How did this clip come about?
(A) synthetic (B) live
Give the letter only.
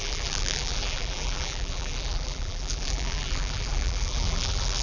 A